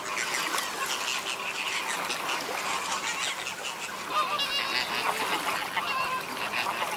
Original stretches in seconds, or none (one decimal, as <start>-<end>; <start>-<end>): 0.0-7.0